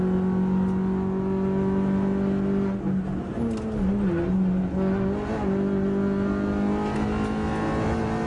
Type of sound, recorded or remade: recorded